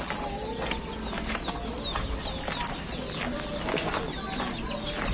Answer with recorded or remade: recorded